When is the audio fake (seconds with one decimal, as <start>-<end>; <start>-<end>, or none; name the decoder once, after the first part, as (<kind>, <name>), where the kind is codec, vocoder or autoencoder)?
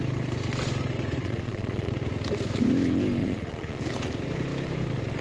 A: 1.2-1.9 (vocoder, Vocos); 3.2-3.8